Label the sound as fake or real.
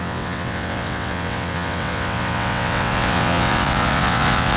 fake